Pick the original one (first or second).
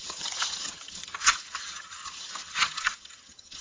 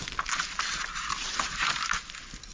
second